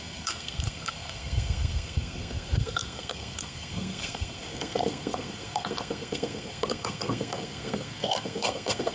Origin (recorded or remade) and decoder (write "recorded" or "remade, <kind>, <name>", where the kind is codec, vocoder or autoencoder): remade, codec, SNAC